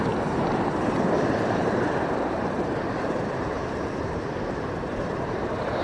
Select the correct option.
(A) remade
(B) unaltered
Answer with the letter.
A